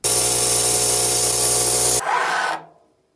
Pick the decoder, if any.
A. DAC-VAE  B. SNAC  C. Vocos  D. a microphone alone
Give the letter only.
D